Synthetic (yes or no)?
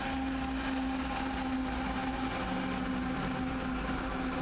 no